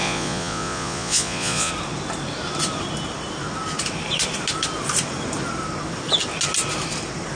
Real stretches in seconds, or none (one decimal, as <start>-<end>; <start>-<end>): 1.7-7.4